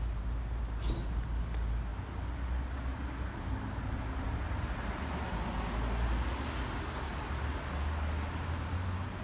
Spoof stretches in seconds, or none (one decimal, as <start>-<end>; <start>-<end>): none